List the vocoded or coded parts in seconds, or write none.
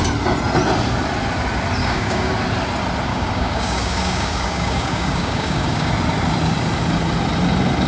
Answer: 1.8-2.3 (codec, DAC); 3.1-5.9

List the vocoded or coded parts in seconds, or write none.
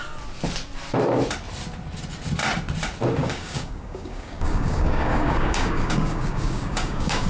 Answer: 3.2-7.3 (codec, DAC)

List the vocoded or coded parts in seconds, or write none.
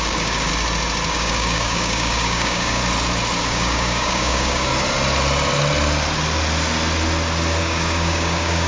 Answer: 0.0-0.5 (codec, DAC); 1.1-2.8; 3.4-4.7; 7.6-8.7